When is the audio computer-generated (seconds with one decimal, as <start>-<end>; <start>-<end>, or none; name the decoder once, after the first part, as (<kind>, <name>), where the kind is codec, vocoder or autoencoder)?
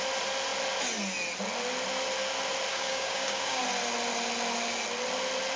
2.7-3.6 (codec, DAC)